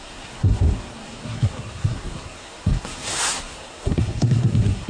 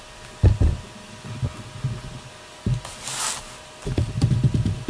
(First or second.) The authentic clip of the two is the second